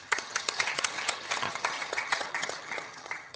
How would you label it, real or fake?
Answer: fake